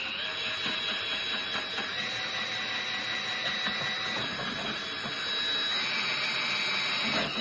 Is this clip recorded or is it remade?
recorded